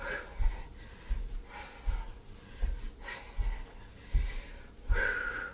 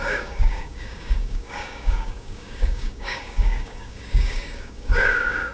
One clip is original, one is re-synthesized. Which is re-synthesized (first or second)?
second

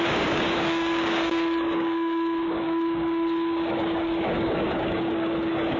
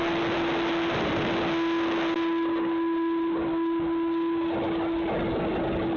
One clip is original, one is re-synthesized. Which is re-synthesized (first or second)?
first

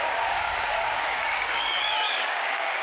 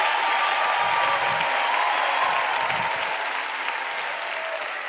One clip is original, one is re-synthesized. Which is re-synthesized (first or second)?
first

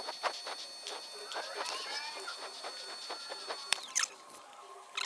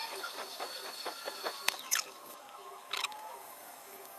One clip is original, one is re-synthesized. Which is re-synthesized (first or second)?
second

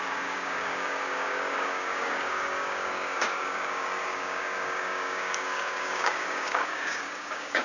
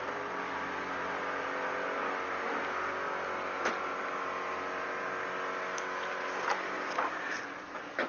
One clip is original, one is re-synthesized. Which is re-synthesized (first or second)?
first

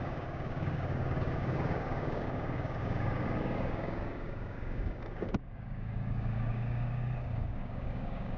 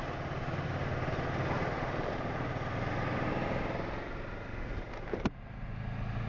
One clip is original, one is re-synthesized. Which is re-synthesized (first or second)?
first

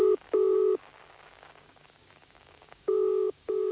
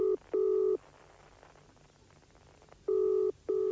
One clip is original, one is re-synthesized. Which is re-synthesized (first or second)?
first